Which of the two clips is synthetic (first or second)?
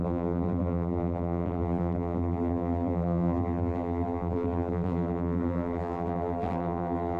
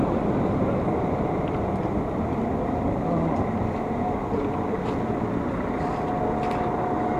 first